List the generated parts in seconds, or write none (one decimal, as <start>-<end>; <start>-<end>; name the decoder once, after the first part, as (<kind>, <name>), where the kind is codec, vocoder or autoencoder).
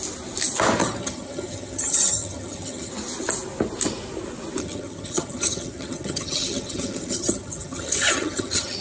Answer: 0.8-2.9 (vocoder, HiFi-GAN); 4.6-8.8